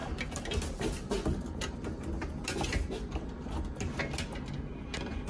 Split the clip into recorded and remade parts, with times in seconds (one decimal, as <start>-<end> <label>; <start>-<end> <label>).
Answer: 0.0-5.3 recorded